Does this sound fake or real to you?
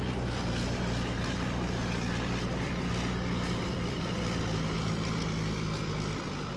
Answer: fake